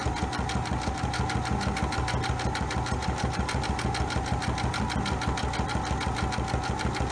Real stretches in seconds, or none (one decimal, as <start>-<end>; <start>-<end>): 0.0-3.0; 3.6-7.1